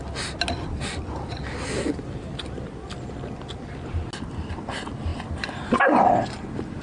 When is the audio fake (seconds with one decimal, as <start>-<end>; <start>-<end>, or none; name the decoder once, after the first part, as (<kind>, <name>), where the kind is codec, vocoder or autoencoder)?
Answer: none